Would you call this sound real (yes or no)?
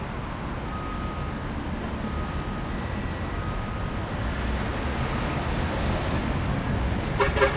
yes